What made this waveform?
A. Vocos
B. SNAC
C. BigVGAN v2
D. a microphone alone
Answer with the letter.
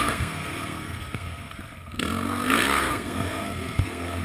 B